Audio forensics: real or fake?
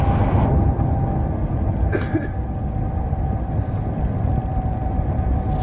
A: fake